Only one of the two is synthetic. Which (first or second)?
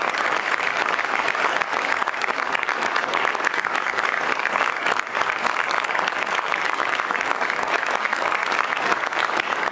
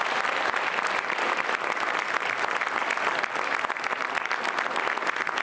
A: first